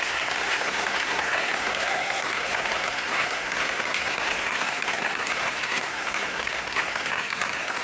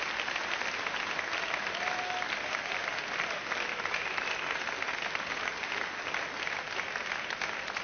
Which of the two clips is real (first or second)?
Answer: second